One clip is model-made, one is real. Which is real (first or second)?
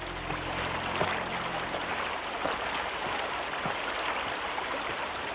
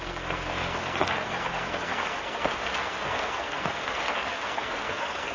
first